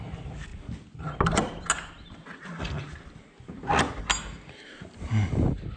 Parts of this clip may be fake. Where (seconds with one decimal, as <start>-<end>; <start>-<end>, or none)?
none